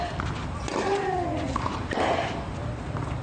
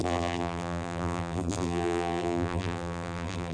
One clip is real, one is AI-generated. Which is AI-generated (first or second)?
second